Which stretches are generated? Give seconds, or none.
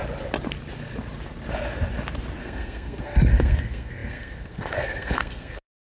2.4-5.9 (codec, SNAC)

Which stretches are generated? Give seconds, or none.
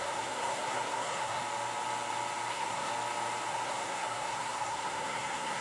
0.0-1.4 (codec, SNAC); 2.5-2.9; 3.5-5.6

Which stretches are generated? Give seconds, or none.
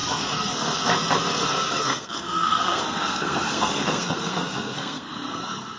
0.0-0.9 (codec, SNAC); 1.8-5.8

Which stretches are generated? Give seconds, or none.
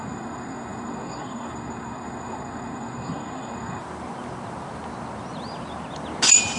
0.0-3.8 (codec, SNAC)